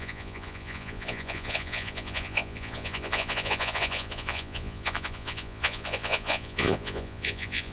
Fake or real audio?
fake